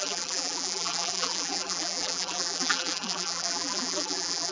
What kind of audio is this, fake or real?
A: fake